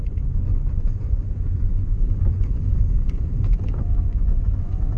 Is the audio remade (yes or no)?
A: yes